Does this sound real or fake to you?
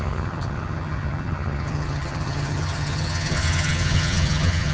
fake